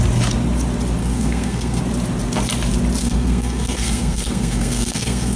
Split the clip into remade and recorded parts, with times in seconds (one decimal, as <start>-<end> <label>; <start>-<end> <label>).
0.0-1.0 recorded; 1.0-1.8 remade; 1.8-3.0 recorded; 3.0-5.4 remade